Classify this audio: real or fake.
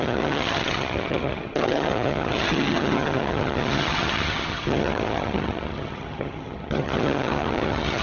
fake